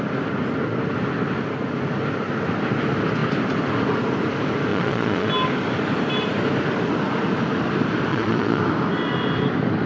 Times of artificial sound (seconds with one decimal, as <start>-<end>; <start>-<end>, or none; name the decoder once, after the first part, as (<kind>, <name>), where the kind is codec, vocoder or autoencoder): 4.7-5.3 (vocoder, Vocos); 8.1-8.6